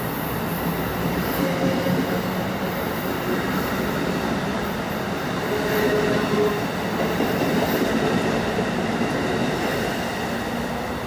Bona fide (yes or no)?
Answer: yes